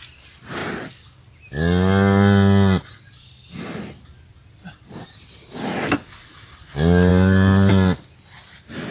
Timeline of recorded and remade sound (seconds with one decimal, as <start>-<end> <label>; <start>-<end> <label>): 0.0-8.9 recorded